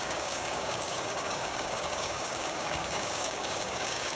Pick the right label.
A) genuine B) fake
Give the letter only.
B